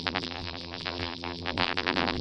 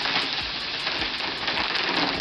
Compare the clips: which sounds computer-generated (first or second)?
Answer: first